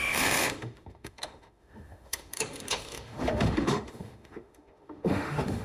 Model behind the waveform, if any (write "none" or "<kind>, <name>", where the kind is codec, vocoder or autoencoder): autoencoder, DAC-VAE